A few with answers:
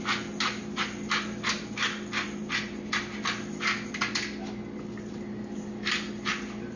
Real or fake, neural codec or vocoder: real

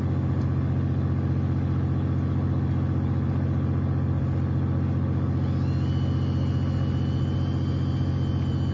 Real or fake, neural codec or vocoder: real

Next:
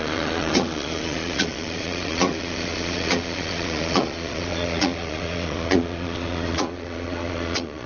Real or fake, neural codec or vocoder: fake, vocoder, Vocos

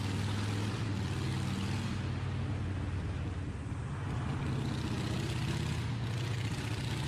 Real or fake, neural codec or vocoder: real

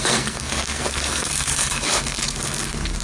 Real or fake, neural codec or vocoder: fake, codec, SNAC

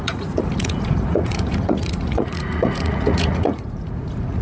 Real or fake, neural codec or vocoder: fake, vocoder, Vocos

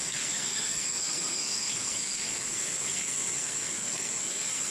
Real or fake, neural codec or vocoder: fake, codec, SNAC